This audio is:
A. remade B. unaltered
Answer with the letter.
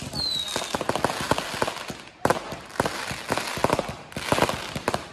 B